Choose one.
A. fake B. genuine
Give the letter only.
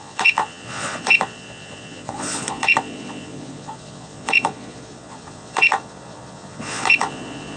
A